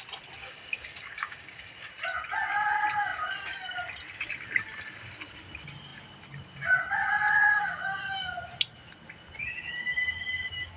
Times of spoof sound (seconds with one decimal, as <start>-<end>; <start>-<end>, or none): 0.4-1.9